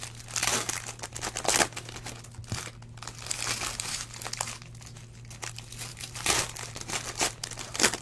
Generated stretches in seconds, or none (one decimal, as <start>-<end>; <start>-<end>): 5.9-6.7